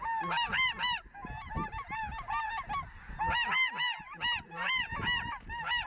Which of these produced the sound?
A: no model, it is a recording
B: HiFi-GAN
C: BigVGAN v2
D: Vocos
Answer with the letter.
A